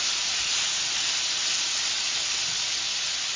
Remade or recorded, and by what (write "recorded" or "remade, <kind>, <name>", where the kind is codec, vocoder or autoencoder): recorded